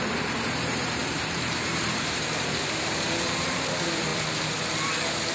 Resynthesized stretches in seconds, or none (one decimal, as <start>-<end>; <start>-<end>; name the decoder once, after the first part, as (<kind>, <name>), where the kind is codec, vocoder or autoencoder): 0.0-4.1 (vocoder, BigVGAN v2)